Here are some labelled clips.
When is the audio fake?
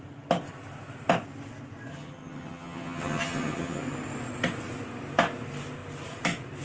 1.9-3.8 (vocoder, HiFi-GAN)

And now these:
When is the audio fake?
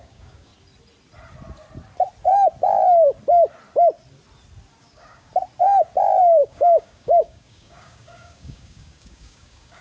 0.0-0.5 (codec, DAC); 4.8-5.3; 6.2-9.8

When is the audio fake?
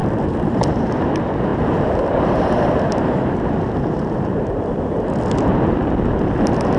0.0-0.7 (vocoder, BigVGAN v2); 1.5-5.6